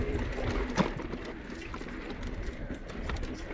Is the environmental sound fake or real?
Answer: real